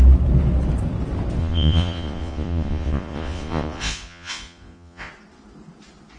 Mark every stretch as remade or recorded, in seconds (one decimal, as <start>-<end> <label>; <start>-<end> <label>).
0.0-1.4 recorded; 1.4-5.1 remade; 5.1-6.2 recorded